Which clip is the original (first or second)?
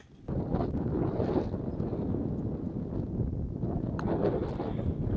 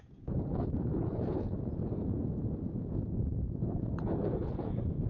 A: first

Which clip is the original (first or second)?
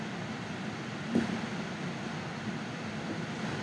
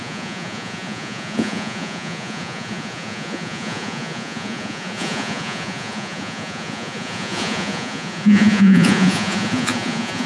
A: first